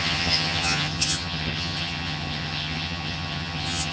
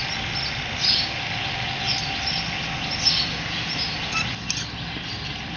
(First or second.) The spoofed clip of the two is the first